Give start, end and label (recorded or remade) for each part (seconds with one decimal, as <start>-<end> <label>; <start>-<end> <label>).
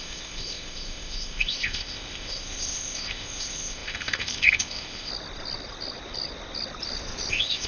0.0-5.1 remade; 5.1-7.3 recorded; 7.3-7.7 remade